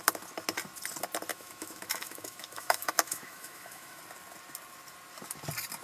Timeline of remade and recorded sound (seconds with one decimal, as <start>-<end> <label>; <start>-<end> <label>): 0.0-1.3 recorded; 1.3-4.0 remade; 4.0-5.8 recorded